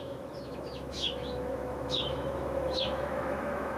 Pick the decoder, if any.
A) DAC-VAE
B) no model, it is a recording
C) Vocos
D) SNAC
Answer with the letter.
A